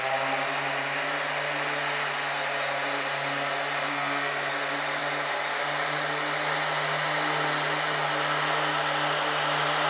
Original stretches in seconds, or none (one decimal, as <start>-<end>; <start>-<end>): 0.0-3.9; 4.5-9.9